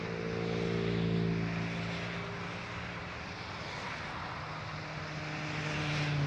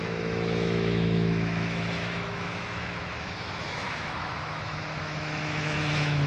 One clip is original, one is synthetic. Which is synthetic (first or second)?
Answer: second